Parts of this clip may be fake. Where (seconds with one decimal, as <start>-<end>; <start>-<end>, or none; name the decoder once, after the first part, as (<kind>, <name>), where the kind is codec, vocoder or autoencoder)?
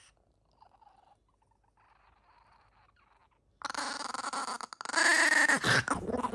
none